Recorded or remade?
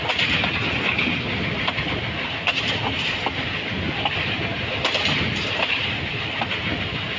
recorded